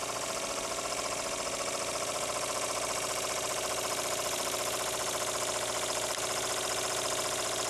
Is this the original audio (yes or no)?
yes